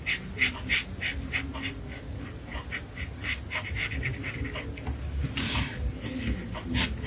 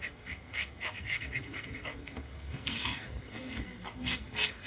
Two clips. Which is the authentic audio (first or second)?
first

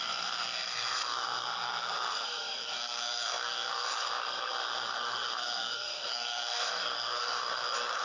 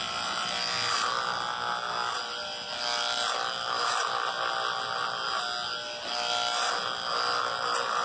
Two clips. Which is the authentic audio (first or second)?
second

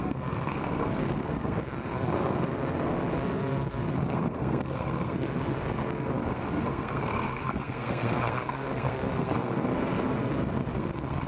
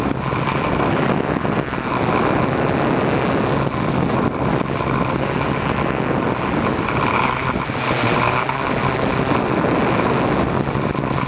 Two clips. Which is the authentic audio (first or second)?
second